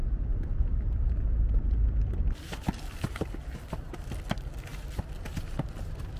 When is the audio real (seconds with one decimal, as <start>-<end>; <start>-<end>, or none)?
3.7-6.2